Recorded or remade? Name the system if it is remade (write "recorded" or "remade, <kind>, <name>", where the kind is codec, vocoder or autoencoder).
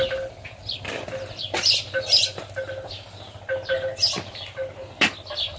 recorded